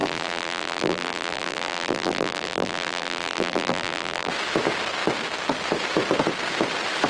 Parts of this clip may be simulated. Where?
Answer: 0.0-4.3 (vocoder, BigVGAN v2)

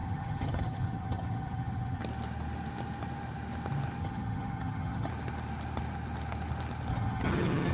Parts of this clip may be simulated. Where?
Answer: 0.0-2.0 (vocoder, HiFi-GAN); 4.0-5.1; 6.9-7.7

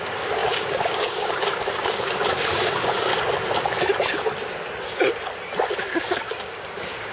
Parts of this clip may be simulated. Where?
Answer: 0.0-3.1 (codec, DAC); 5.8-7.1

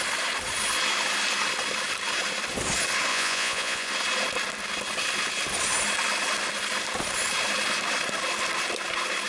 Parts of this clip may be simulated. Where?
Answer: 3.1-3.9 (vocoder, Vocos)

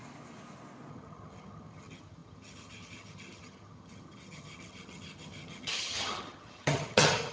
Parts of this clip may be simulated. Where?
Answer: 0.9-7.3 (vocoder, HiFi-GAN)

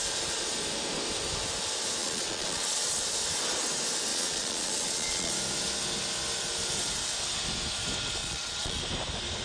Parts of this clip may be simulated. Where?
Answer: 2.0-3.0 (vocoder, Vocos); 4.1-5.3; 8.2-8.8

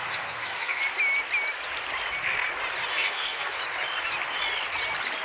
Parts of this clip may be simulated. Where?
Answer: 0.0-0.8 (codec, SNAC); 2.9-3.6